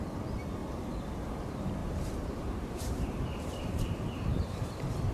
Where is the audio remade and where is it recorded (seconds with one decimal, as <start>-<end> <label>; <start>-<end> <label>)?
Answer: 0.0-1.8 recorded; 1.8-5.1 remade